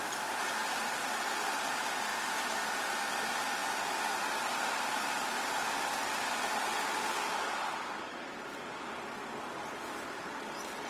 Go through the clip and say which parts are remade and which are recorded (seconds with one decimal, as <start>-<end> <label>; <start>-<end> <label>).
0.0-10.9 recorded